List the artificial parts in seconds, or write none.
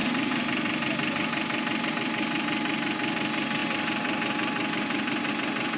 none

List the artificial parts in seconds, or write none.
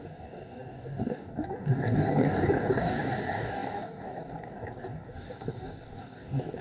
0.0-6.6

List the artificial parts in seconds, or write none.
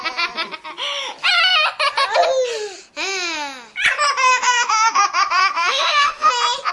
4.3-5.0; 5.4-6.3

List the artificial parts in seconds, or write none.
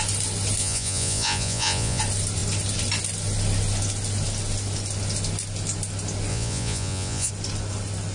0.6-2.0; 6.3-7.3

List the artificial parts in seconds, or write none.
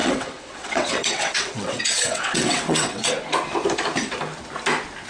0.0-3.1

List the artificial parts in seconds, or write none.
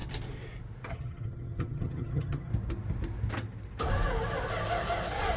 0.9-2.5